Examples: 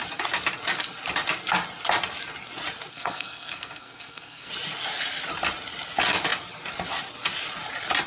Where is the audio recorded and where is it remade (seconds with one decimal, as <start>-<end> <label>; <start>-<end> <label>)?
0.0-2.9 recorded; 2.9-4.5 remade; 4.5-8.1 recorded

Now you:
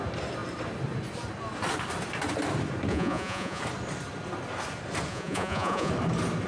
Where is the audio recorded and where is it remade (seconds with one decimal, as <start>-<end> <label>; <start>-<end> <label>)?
0.0-2.9 recorded; 2.9-3.6 remade; 3.6-5.1 recorded; 5.1-5.9 remade; 5.9-6.5 recorded

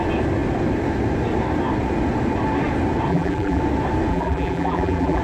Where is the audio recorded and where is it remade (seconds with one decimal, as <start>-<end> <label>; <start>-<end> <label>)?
0.0-3.1 recorded; 3.1-3.6 remade; 3.6-4.1 recorded; 4.1-5.2 remade

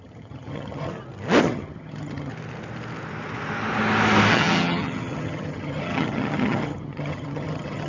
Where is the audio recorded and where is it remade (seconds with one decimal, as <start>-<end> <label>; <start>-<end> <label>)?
0.0-0.9 remade; 0.9-1.4 recorded; 1.4-2.3 remade; 2.3-4.3 recorded; 4.3-7.9 remade

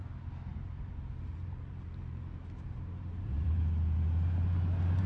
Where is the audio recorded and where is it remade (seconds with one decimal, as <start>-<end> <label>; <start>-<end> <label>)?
0.0-0.5 recorded; 0.5-3.6 remade; 3.6-5.1 recorded

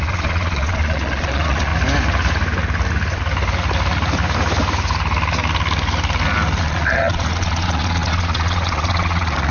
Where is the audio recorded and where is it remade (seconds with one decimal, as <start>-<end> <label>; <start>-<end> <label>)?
0.0-1.7 remade; 1.7-6.6 recorded; 6.6-9.5 remade